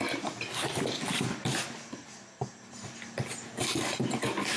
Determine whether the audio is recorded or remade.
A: recorded